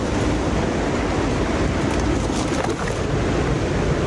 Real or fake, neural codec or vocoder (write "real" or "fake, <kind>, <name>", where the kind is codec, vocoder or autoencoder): fake, vocoder, BigVGAN v2